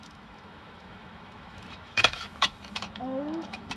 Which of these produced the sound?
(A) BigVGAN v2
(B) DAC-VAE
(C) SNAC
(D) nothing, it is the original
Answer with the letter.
B